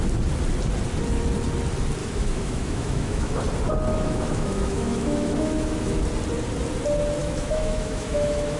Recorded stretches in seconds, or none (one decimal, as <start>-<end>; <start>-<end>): 0.0-2.0; 3.3-3.9; 6.0-7.2